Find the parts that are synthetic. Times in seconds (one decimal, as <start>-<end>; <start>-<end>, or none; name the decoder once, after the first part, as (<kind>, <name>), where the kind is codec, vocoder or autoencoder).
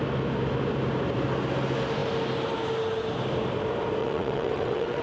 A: 4.0-5.0 (vocoder, WaveNeXt)